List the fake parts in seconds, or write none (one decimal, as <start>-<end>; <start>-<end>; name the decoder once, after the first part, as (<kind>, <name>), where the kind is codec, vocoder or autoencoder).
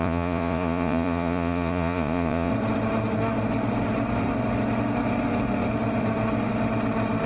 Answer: 0.0-2.5 (vocoder, Vocos)